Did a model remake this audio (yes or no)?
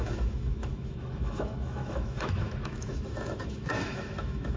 yes